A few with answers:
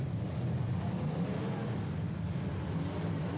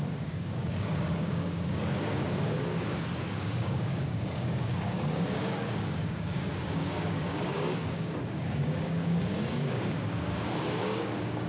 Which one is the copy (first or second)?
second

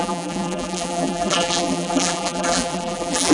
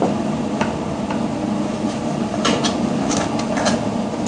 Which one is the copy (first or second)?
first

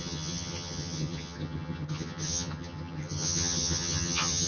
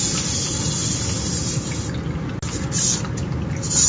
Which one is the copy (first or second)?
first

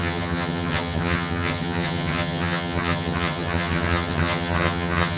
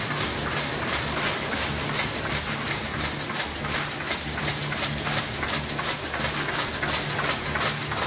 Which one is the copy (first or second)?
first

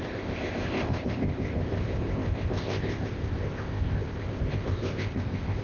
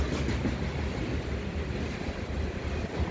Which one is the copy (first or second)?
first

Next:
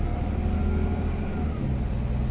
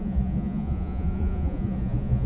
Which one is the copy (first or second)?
second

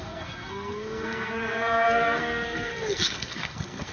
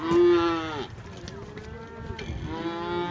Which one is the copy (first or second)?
first